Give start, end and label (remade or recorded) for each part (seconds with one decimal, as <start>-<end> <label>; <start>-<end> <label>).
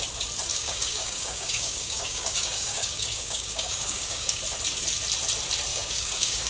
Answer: 0.0-0.5 recorded; 0.5-4.4 remade; 4.4-5.7 recorded; 5.7-6.5 remade